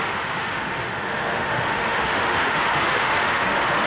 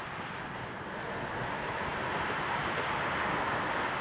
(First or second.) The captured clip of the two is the second